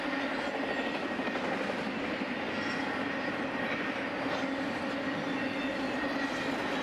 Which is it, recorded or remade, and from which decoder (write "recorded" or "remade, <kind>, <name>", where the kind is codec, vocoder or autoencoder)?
recorded